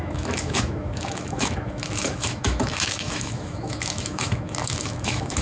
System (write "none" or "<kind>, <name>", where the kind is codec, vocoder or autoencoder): autoencoder, DAC-VAE